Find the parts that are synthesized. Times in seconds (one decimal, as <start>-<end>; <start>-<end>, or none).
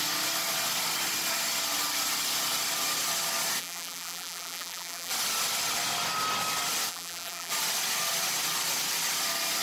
3.6-5.1; 6.9-7.5